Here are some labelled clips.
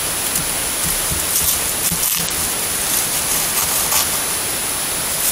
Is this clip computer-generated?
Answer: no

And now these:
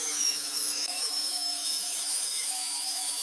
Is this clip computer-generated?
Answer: yes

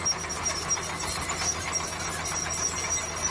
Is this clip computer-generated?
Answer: no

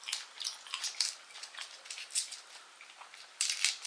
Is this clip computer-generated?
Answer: no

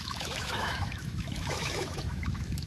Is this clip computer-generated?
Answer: yes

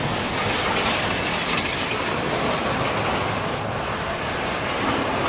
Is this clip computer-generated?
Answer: no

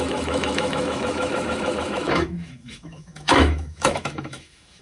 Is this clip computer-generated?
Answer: yes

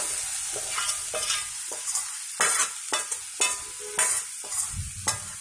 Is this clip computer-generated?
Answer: no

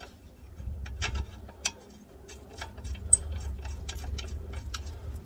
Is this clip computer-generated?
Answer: no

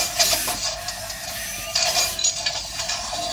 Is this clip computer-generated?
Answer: no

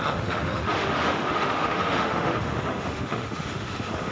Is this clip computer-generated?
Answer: yes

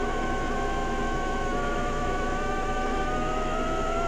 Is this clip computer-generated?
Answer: yes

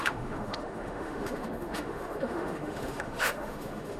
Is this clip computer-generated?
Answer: yes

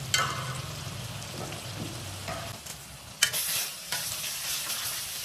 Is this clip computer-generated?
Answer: no